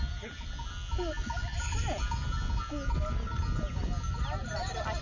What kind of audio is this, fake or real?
real